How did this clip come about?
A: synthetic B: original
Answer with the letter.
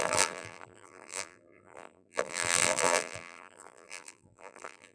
A